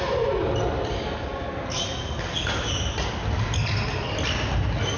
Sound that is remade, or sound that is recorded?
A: recorded